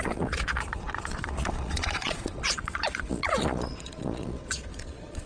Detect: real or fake fake